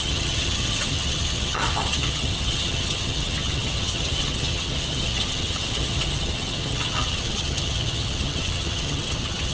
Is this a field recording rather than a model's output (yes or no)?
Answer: no